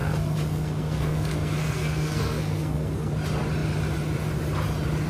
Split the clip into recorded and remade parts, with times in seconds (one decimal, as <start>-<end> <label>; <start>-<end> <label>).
0.0-3.1 remade; 3.1-5.1 recorded